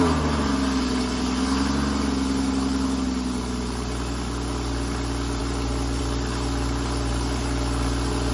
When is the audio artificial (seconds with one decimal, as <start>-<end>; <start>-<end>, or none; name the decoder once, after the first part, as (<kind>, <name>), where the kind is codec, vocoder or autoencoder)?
none